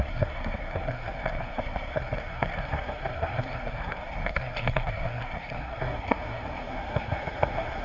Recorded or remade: remade